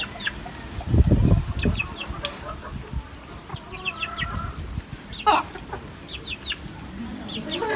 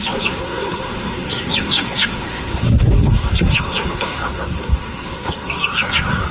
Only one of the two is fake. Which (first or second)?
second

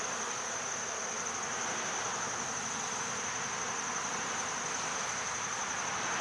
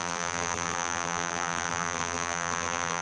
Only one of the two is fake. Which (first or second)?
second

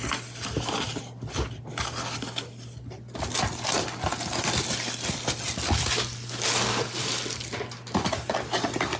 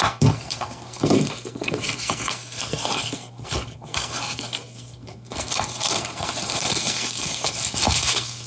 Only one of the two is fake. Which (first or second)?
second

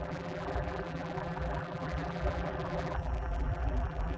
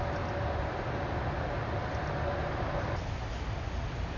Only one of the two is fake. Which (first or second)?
first